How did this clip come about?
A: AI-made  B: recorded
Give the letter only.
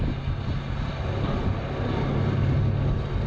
B